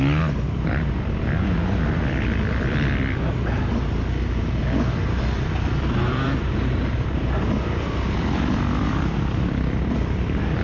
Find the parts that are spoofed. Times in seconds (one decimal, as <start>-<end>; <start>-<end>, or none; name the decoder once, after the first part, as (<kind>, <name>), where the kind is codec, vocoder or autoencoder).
0.0-3.0 (vocoder, BigVGAN v2); 4.9-10.6